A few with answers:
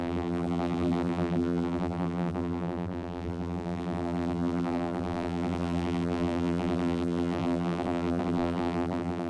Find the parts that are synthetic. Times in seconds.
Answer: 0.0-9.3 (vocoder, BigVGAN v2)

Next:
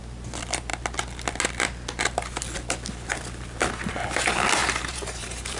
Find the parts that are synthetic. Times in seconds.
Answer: 4.6-5.6 (vocoder, BigVGAN v2)

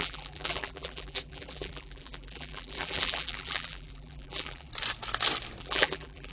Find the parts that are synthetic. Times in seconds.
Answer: 0.0-4.7 (vocoder, BigVGAN v2); 5.6-6.3